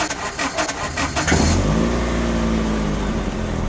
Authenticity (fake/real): real